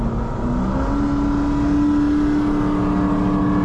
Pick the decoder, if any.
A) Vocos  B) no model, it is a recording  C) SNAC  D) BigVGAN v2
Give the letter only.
B